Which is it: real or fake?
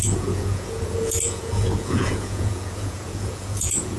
fake